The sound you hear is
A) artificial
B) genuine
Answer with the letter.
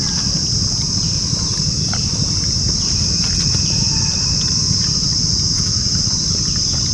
B